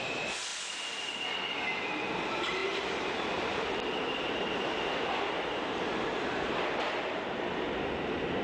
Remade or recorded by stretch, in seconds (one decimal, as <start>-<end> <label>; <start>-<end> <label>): 0.0-0.5 recorded; 0.5-1.1 remade; 1.1-2.6 recorded; 2.6-7.2 remade; 7.2-8.4 recorded